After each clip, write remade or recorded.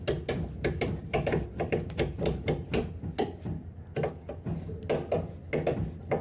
recorded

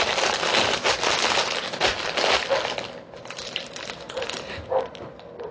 recorded